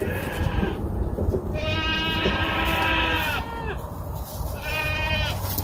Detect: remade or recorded recorded